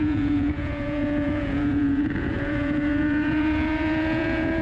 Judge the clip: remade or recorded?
remade